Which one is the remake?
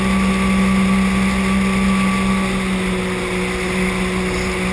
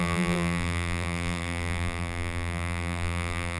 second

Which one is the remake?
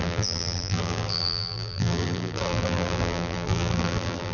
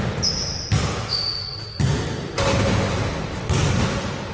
first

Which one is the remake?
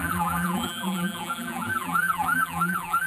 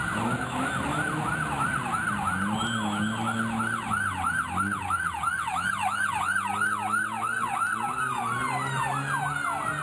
first